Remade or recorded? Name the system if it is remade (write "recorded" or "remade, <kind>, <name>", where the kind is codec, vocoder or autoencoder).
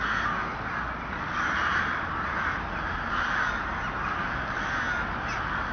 recorded